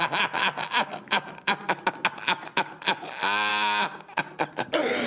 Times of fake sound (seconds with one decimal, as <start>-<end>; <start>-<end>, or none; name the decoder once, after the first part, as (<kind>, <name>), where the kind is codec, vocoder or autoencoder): none

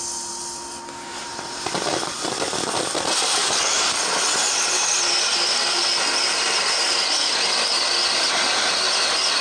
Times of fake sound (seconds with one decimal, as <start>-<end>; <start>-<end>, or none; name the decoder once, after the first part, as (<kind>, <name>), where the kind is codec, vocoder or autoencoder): 1.1-2.3 (vocoder, BigVGAN v2); 3.4-4.9; 8.0-8.8

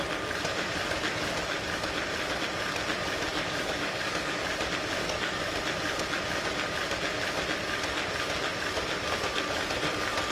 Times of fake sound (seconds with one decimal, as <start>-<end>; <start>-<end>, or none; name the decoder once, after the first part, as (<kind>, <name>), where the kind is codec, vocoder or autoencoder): 3.3-4.4 (codec, DAC); 5.0-5.6

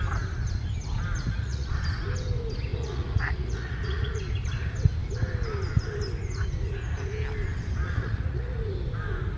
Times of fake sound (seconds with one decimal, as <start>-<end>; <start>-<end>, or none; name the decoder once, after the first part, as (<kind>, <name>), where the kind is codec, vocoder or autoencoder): 1.2-1.7 (vocoder, Vocos); 2.7-4.2; 7.8-8.6

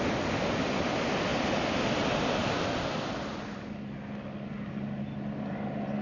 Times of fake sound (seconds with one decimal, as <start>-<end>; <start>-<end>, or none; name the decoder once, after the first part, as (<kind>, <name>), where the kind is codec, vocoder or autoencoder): none

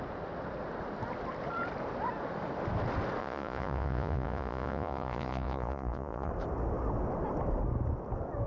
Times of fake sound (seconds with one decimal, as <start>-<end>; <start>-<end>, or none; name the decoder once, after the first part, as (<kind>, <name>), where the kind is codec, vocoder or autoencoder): 3.2-6.3 (vocoder, Vocos)

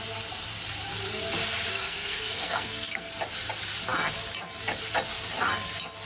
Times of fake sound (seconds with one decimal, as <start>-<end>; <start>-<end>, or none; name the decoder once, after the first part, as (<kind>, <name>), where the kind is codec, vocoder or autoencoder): 1.7-3.1 (codec, SNAC)

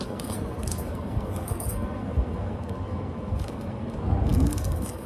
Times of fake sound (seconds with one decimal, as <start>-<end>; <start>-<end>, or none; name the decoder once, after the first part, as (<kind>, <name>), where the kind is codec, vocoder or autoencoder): 0.0-5.1 (codec, SNAC)